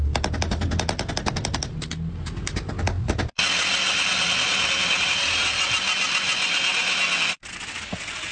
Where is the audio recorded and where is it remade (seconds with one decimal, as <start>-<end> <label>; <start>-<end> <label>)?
0.0-4.8 recorded; 4.8-5.6 remade; 5.6-8.3 recorded